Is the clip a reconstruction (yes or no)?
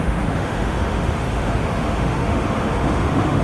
yes